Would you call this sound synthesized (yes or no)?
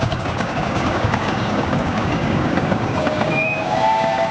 yes